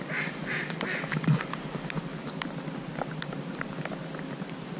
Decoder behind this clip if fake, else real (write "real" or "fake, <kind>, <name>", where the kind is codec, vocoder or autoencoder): real